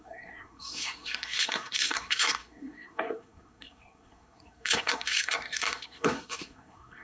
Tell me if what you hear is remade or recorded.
remade